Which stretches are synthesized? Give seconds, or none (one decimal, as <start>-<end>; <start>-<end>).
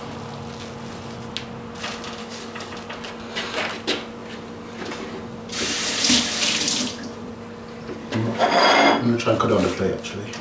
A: 2.2-2.7; 8.0-8.6